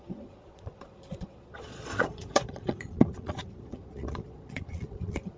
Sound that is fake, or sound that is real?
fake